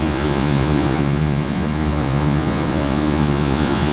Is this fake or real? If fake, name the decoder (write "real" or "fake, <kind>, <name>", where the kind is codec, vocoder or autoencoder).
fake, vocoder, Vocos